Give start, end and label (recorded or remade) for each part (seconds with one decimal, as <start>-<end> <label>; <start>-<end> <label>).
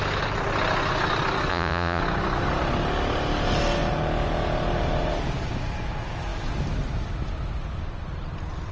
0.0-1.5 recorded; 1.5-2.0 remade; 2.0-8.7 recorded